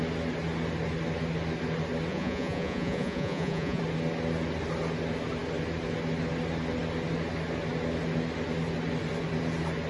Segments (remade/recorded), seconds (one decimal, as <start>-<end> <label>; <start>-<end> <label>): 0.0-2.1 recorded; 2.1-3.8 remade; 3.8-9.9 recorded